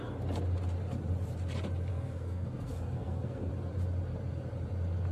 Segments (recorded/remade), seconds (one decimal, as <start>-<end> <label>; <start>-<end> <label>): 0.0-1.9 recorded; 1.9-3.5 remade; 3.5-5.1 recorded